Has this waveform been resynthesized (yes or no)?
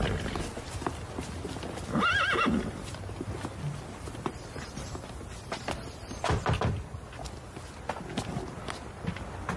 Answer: no